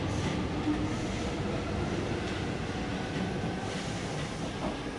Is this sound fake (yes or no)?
no